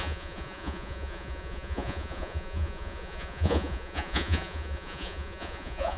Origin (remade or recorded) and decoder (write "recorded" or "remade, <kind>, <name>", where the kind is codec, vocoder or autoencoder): remade, vocoder, Vocos